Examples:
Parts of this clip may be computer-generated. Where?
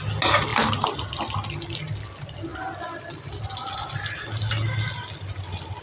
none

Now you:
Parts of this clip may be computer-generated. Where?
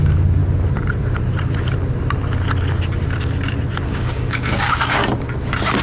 0.0-0.4; 3.9-5.0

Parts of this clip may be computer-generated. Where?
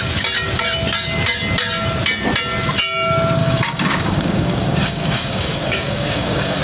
3.4-6.6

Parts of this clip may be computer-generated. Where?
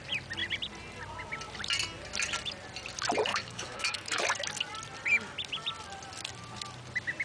3.3-4.2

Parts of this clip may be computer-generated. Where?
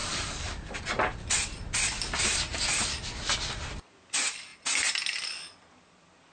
0.0-0.8